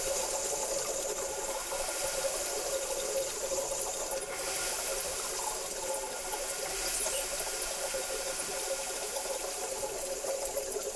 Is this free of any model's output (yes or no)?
yes